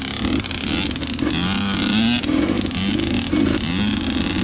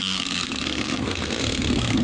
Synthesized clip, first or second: second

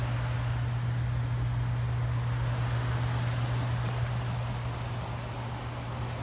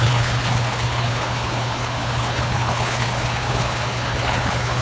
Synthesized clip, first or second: second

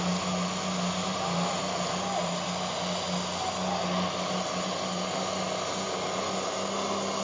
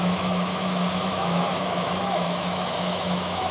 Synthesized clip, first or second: second